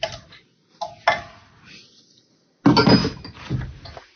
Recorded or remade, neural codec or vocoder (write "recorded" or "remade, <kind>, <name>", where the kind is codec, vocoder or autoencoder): recorded